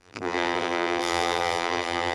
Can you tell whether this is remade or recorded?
remade